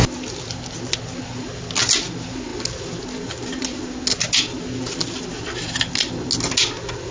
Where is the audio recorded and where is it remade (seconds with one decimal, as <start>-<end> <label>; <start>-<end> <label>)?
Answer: 0.0-7.1 recorded